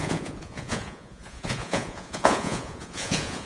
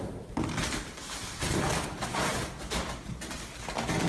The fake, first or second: first